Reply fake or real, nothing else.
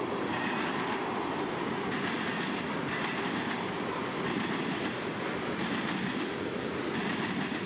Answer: real